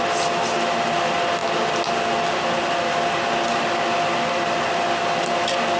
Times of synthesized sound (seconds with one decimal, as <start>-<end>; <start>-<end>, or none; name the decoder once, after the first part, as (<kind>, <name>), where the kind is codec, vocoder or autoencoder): none